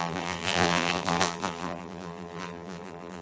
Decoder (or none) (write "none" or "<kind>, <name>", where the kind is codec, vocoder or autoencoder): vocoder, BigVGAN v2